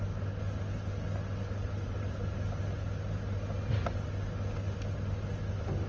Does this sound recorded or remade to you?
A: recorded